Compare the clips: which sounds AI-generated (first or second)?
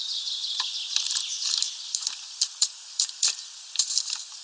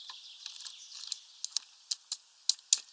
first